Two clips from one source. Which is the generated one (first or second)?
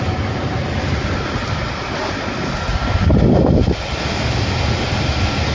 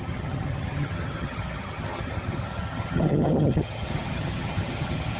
second